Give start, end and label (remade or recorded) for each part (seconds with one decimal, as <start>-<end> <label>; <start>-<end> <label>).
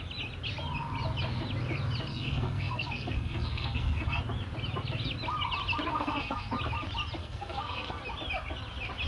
0.0-2.1 recorded; 2.1-4.2 remade; 4.2-5.9 recorded; 5.9-6.5 remade; 6.5-7.2 recorded; 7.2-8.0 remade; 8.0-9.1 recorded